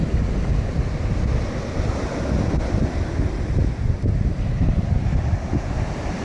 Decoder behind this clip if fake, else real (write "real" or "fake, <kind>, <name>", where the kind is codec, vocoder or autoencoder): real